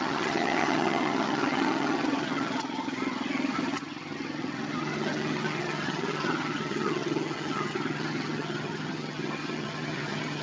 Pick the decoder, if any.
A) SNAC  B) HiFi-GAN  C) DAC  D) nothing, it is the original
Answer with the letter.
B